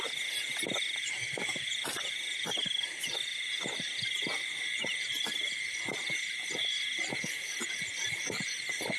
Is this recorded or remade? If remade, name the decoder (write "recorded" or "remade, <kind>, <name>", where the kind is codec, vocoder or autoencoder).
recorded